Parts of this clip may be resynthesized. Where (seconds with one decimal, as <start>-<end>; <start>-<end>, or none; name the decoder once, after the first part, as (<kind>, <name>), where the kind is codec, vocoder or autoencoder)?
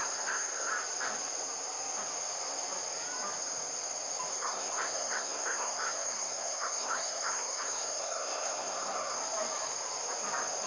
0.0-0.7 (codec, SNAC); 4.3-9.2